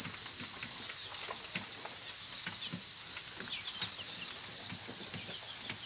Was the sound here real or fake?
real